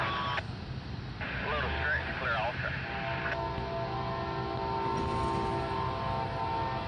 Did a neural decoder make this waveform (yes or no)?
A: no